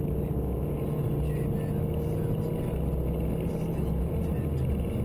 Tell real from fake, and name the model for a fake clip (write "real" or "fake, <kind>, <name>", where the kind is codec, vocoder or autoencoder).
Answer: real